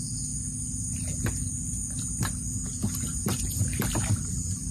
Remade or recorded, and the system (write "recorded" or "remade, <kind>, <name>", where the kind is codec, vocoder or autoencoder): recorded